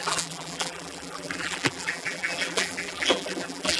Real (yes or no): no